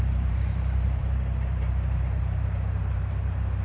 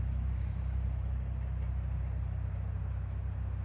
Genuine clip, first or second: second